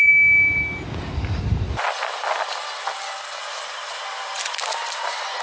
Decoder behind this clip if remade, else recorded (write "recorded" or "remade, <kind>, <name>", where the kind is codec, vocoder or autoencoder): recorded